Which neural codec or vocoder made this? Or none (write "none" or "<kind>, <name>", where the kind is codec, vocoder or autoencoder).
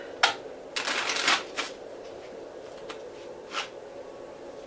none